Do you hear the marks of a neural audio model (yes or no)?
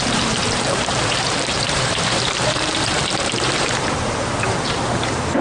yes